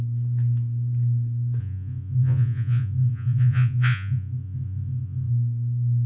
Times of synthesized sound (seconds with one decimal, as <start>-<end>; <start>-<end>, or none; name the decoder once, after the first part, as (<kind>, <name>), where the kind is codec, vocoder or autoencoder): 1.6-5.3 (vocoder, Vocos)